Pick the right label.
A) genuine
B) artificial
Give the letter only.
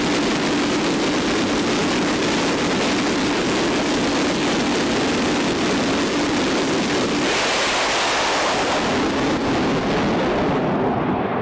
A